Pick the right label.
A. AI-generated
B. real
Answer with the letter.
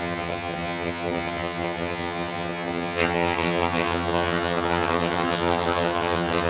A